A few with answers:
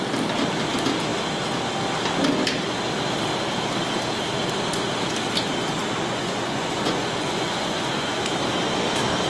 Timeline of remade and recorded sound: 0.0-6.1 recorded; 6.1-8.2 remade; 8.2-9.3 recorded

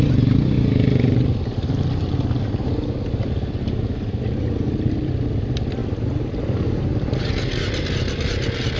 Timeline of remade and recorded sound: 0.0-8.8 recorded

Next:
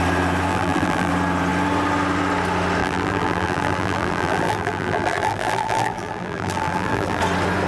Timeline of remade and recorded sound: 0.0-0.5 recorded; 0.5-1.1 remade; 1.1-2.8 recorded; 2.8-7.2 remade; 7.2-7.7 recorded